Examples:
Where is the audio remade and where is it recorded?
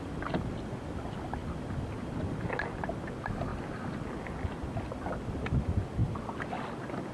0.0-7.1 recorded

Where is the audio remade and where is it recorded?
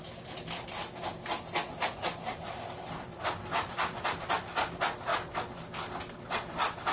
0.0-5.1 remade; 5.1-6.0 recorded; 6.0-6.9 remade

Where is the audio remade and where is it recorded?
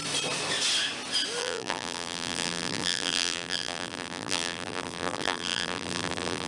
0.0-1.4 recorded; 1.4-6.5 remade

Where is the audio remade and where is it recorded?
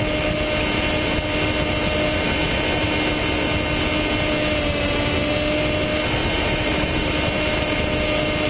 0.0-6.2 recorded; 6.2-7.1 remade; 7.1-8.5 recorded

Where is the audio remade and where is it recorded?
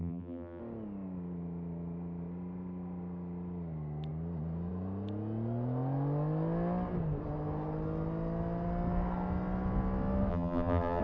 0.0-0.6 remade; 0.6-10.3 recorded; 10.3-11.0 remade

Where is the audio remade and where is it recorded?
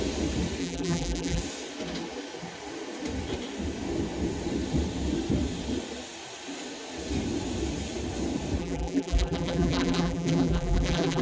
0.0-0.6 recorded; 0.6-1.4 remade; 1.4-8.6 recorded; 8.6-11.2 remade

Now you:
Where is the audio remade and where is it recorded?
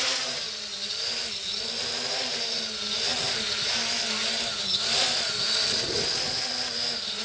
0.0-7.2 recorded